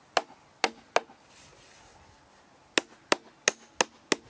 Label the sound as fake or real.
real